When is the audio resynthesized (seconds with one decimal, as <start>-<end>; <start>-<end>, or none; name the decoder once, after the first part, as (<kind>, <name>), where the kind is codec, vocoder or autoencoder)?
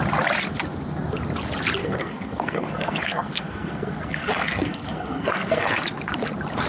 1.8-5.8 (codec, SNAC)